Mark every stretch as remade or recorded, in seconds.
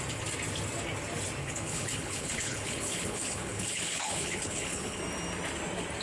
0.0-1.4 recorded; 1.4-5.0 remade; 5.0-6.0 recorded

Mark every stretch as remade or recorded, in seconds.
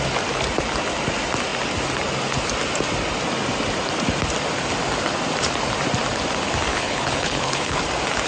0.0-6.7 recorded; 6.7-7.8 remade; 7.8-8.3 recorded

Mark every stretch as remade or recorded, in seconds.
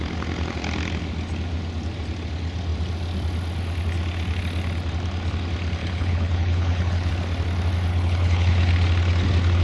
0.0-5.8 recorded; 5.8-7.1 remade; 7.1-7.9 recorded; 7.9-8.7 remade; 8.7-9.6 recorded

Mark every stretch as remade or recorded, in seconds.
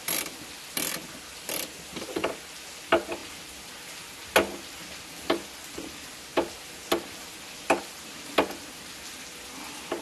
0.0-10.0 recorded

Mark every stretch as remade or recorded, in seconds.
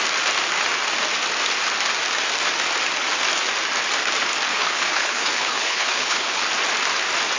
0.0-4.5 recorded; 4.5-6.4 remade; 6.4-7.4 recorded